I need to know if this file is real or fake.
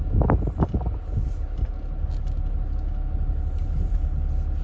real